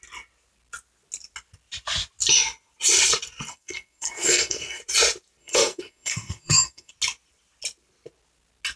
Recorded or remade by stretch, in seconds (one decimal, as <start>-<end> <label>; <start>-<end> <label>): 0.0-3.5 recorded; 3.5-4.8 remade; 4.8-5.4 recorded; 5.4-6.9 remade; 6.9-8.8 recorded